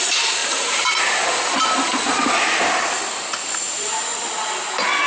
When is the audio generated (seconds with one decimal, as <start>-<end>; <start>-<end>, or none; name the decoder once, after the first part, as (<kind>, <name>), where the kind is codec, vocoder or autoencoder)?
0.0-4.1 (vocoder, BigVGAN v2)

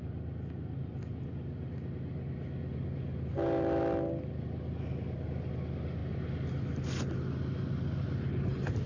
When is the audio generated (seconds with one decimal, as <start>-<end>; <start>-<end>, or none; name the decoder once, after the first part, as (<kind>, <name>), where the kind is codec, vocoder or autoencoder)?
none

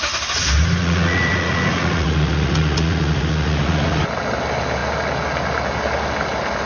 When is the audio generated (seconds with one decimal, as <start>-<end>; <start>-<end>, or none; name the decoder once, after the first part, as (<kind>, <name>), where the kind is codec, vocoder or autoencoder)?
0.8-4.0 (vocoder, Vocos)

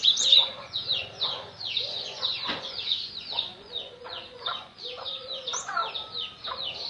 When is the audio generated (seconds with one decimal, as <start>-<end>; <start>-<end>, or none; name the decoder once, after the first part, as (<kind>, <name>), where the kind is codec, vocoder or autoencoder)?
0.0-5.8 (vocoder, Vocos)

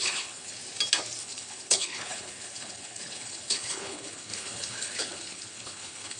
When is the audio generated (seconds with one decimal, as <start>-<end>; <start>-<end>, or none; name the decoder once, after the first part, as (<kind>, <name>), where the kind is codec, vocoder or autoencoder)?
0.0-0.6 (codec, HILCodec); 1.2-6.2

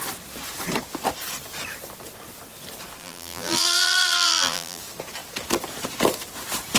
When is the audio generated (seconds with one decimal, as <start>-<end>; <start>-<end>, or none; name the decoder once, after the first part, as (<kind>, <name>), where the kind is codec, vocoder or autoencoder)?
3.0-4.8 (vocoder, BigVGAN v2)